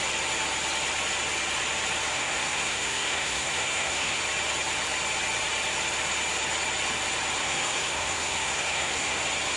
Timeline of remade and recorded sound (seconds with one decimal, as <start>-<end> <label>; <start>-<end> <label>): 0.0-2.1 recorded; 2.1-4.2 remade; 4.2-7.4 recorded; 7.4-9.2 remade; 9.2-9.6 recorded